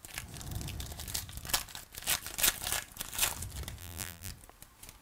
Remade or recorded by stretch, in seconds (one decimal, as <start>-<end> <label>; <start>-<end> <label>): 0.0-3.8 recorded; 3.8-4.3 remade; 4.3-5.0 recorded

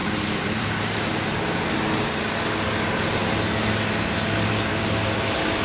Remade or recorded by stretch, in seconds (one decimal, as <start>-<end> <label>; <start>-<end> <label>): 0.0-0.8 remade; 0.8-5.6 recorded